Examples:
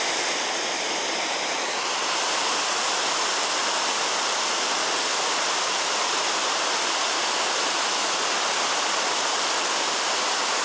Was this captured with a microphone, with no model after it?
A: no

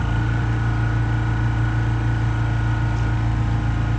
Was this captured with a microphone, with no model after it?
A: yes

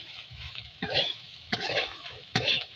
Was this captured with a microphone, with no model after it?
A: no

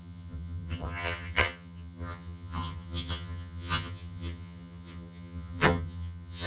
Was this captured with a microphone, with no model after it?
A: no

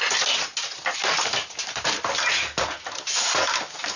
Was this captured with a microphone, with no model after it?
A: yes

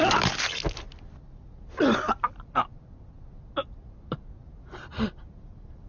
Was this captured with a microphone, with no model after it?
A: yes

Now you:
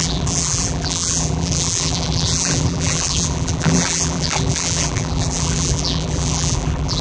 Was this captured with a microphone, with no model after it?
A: no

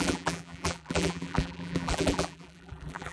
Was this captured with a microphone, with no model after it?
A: no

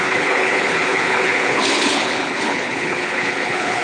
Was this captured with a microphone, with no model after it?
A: no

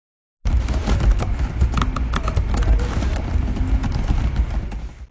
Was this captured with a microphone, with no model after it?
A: yes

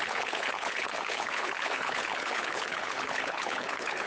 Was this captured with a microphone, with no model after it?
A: no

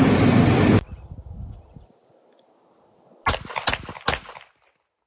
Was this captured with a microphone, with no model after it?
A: yes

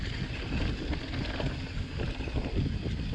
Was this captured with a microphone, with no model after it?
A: yes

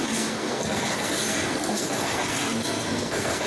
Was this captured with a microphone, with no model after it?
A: no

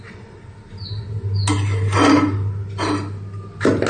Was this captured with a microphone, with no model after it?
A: yes